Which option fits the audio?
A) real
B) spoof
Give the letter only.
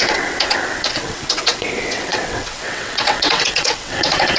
B